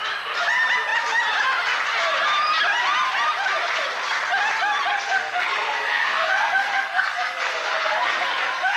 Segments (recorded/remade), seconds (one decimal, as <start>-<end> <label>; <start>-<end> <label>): 0.0-4.9 recorded; 4.9-8.8 remade